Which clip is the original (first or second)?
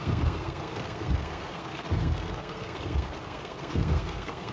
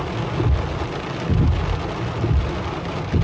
second